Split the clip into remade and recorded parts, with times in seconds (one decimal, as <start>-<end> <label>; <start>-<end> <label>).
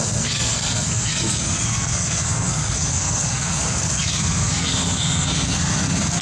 0.0-6.2 remade